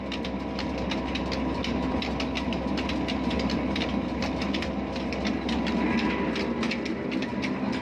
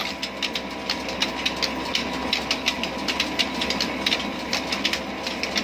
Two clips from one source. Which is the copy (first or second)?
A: first